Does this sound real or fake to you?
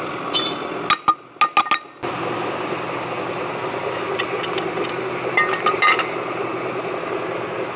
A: real